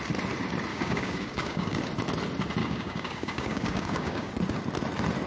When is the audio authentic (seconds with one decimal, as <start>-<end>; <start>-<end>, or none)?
0.0-0.7; 1.8-2.6; 4.3-5.3